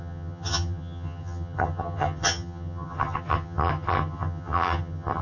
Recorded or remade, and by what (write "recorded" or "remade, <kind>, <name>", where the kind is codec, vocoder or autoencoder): remade, vocoder, HiFi-GAN